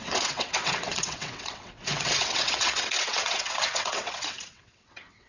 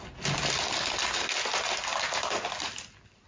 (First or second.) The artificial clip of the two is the first